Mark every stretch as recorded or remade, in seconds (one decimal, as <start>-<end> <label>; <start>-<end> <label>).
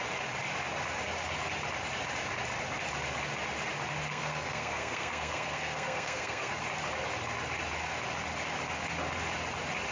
0.0-4.1 recorded; 4.1-6.5 remade; 6.5-9.9 recorded